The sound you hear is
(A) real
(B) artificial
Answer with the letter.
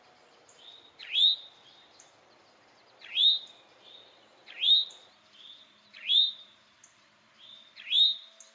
B